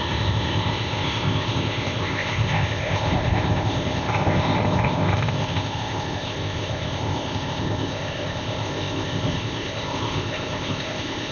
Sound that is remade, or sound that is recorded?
remade